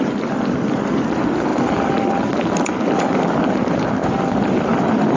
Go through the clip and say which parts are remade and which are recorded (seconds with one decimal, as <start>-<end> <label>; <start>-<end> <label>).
0.0-5.2 recorded

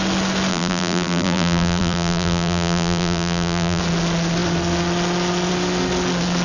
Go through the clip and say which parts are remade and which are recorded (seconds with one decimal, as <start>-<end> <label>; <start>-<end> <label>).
0.0-0.5 recorded; 0.5-3.8 remade; 3.8-6.4 recorded

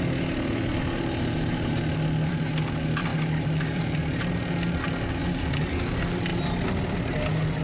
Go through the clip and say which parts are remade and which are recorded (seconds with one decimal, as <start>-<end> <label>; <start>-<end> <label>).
0.0-3.1 recorded; 3.1-3.6 remade; 3.6-5.2 recorded; 5.2-5.7 remade; 5.7-7.6 recorded